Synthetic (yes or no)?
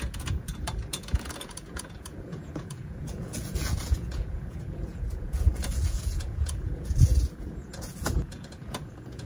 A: yes